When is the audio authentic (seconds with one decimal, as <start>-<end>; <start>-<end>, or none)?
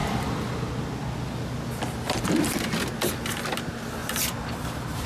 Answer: 0.0-4.0